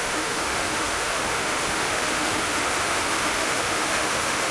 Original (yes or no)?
no